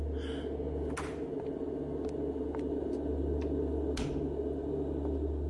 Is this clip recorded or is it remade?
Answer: recorded